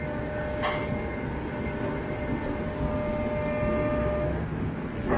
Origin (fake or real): real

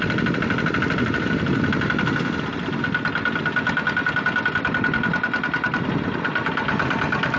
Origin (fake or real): real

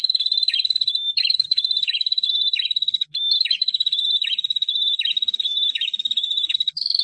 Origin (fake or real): fake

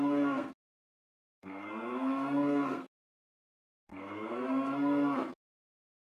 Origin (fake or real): fake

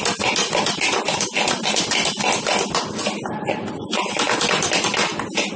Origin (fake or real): real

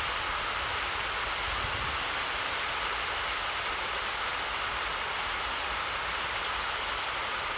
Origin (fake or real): real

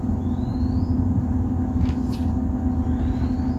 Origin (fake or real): real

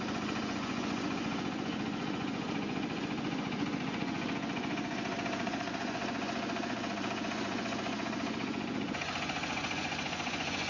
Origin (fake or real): fake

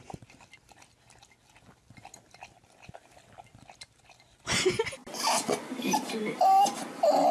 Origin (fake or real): real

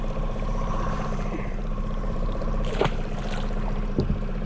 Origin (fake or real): fake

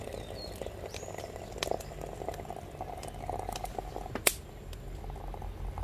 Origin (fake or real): real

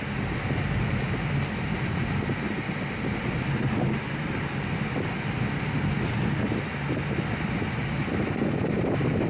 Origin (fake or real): real